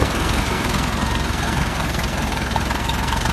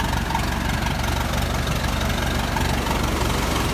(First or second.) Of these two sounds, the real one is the second